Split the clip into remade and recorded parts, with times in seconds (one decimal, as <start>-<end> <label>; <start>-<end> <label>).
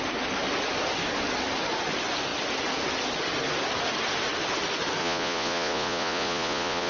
0.0-5.0 recorded; 5.0-6.9 remade